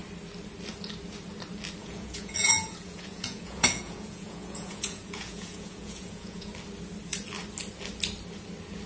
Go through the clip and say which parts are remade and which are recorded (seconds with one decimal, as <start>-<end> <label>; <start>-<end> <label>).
0.0-1.8 recorded; 1.8-6.5 remade; 6.5-8.9 recorded